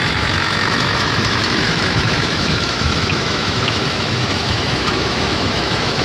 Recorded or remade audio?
remade